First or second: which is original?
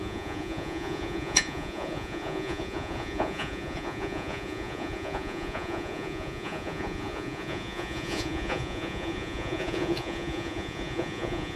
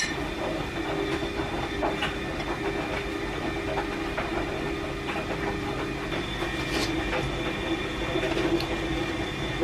second